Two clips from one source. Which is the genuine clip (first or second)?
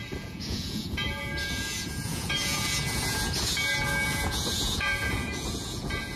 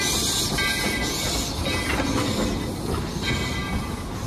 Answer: second